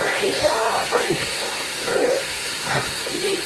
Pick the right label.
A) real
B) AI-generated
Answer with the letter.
B